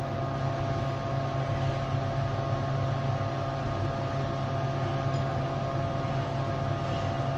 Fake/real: real